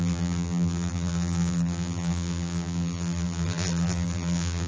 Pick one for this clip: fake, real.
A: fake